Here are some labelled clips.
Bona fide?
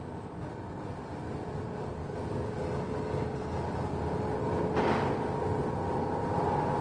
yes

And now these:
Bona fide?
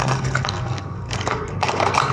no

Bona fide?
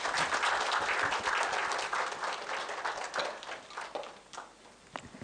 yes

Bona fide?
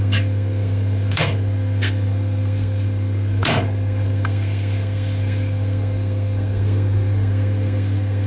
no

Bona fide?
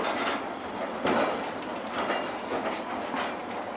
yes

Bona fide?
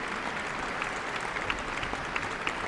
yes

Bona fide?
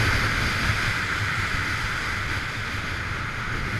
yes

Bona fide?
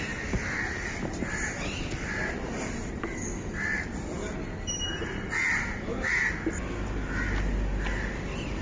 yes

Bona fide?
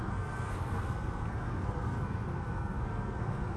no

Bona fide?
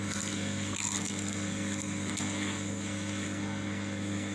no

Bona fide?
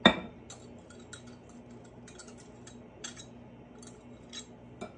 yes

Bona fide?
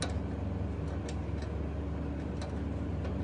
yes